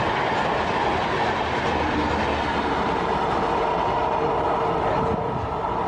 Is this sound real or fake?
real